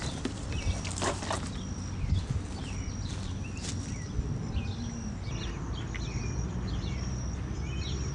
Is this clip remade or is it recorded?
recorded